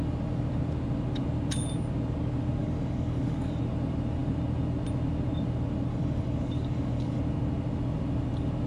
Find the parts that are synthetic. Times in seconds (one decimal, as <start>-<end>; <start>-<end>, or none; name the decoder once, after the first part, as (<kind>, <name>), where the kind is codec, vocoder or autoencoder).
2.6-3.6 (codec, DAC); 5.9-7.2